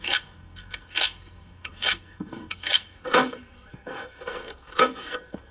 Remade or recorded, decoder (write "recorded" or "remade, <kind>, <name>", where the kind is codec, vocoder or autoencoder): remade, codec, SNAC